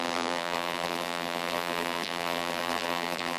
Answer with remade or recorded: remade